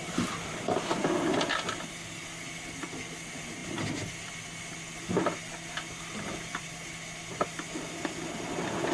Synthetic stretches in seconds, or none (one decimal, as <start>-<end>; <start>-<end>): none